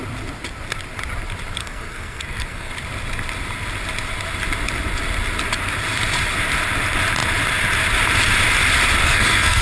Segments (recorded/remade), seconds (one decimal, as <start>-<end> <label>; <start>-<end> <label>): 0.0-1.6 recorded; 1.6-2.7 remade; 2.7-9.0 recorded; 9.0-9.6 remade